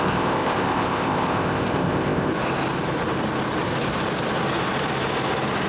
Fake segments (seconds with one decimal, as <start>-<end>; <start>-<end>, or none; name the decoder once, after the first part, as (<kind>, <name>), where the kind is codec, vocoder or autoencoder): 0.0-2.3 (codec, ZipCodec)